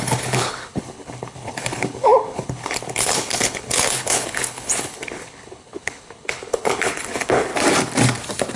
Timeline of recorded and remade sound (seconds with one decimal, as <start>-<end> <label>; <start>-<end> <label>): 0.0-7.5 remade; 7.5-8.6 recorded